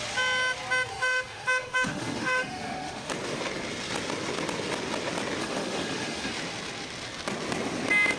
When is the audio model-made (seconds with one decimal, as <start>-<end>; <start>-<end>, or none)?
0.9-3.1; 5.4-6.3